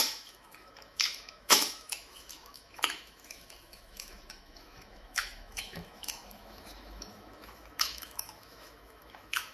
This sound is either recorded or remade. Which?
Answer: remade